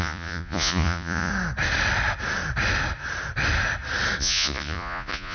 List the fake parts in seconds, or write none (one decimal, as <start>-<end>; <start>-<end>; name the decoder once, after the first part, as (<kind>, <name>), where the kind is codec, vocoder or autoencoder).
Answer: 0.0-1.3 (vocoder, Vocos); 4.2-5.3